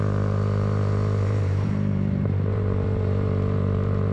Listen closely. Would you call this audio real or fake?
fake